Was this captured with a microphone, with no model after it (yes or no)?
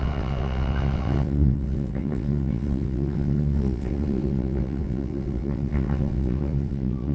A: no